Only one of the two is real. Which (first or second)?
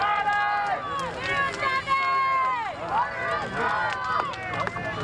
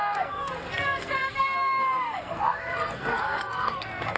first